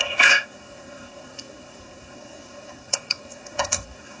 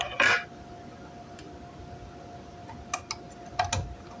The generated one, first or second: first